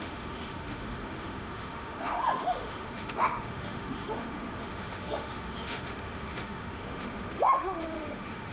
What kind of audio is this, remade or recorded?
remade